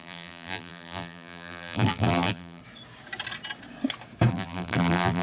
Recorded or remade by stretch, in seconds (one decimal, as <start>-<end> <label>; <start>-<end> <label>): 0.0-2.6 remade; 2.6-4.3 recorded; 4.3-5.2 remade